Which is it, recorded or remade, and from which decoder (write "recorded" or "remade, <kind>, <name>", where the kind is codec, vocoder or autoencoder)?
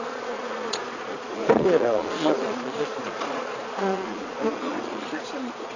remade, vocoder, Vocos